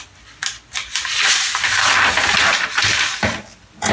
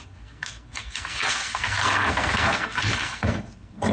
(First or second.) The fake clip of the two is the second